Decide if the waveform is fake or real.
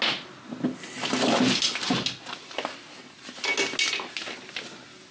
real